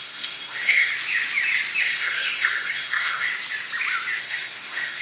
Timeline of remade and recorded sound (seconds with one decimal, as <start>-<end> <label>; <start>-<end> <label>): 0.0-0.9 remade; 0.9-1.8 recorded; 1.8-3.3 remade; 3.3-4.2 recorded; 4.2-5.0 remade